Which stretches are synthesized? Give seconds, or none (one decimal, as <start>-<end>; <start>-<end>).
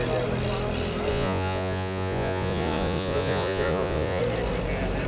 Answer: 1.1-4.2